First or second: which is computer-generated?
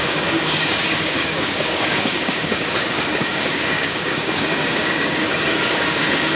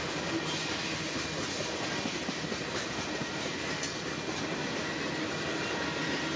first